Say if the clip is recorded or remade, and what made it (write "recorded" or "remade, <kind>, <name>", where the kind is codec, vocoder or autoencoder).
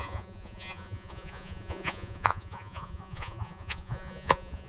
remade, vocoder, Vocos